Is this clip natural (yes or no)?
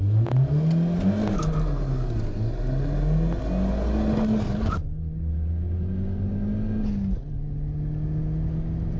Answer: yes